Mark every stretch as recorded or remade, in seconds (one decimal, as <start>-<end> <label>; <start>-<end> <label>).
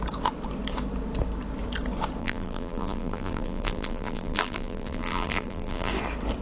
0.0-2.2 recorded; 2.2-5.9 remade; 5.9-6.4 recorded